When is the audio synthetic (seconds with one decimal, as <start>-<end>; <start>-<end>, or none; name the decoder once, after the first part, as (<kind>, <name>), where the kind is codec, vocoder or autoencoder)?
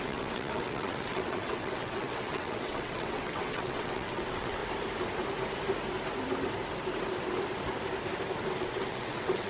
0.0-4.6 (vocoder, WaveNeXt); 8.6-9.5